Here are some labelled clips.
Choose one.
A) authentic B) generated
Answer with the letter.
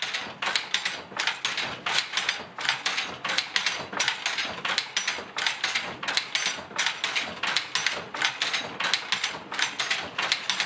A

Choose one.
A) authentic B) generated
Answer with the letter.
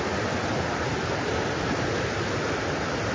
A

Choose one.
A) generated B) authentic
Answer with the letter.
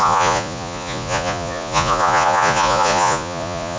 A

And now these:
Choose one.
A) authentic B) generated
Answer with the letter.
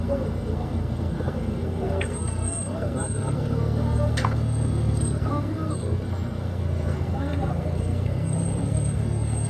B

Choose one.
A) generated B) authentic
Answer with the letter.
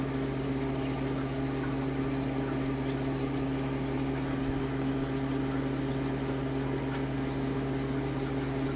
B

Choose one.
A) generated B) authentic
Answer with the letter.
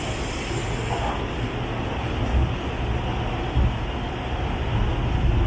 B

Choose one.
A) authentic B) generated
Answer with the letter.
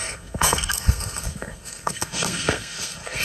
B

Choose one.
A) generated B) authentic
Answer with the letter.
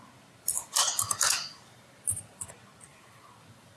B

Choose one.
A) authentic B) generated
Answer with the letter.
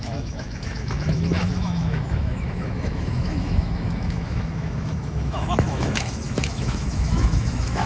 B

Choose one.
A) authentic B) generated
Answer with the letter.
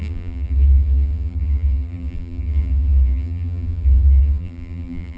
B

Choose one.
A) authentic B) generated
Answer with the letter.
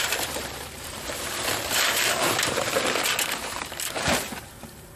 B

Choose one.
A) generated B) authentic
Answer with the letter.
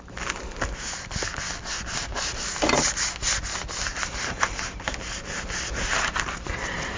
B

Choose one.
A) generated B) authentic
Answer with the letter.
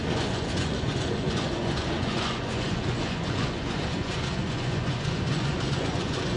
A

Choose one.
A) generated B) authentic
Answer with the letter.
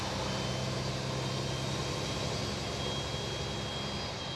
B